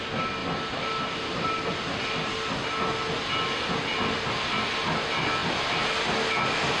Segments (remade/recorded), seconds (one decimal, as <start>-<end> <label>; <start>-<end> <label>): 0.0-6.8 recorded